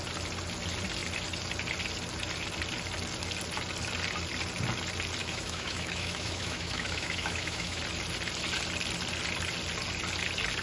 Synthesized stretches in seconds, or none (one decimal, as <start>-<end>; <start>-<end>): 5.2-7.8